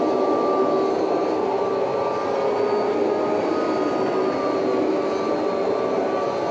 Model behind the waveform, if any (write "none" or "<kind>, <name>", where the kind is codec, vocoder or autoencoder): none